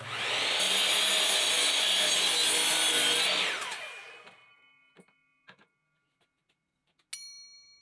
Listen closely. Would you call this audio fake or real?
real